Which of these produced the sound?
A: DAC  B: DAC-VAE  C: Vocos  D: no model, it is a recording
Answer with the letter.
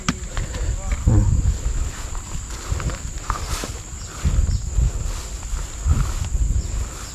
D